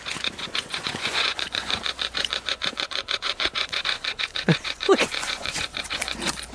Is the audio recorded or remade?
remade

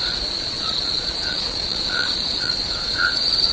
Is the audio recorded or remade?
remade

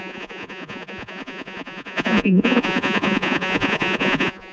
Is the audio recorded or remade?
remade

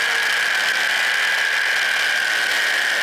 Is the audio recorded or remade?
recorded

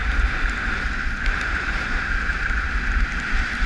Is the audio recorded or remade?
recorded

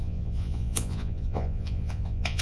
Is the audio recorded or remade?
remade